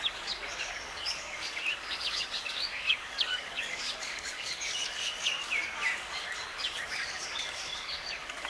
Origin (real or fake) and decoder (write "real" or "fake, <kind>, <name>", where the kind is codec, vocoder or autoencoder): fake, codec, DAC